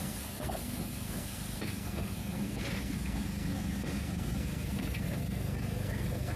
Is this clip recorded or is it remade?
remade